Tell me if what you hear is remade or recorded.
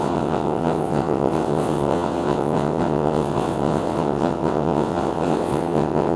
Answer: remade